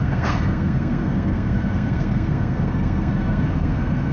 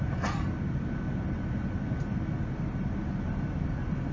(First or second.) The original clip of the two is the second